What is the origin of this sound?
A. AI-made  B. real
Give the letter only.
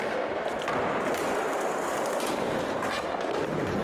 B